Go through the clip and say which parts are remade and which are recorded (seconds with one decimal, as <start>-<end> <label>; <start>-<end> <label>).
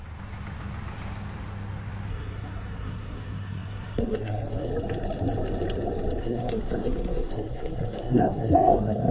0.0-2.1 recorded; 2.1-4.7 remade; 4.7-6.2 recorded; 6.2-9.1 remade